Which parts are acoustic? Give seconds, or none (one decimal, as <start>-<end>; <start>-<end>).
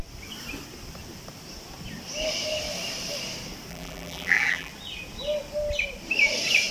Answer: 0.0-3.7; 4.7-6.7